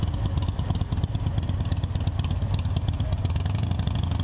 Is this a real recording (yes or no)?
yes